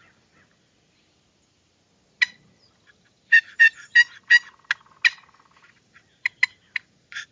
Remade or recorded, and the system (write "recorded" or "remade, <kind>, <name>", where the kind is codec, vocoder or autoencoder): recorded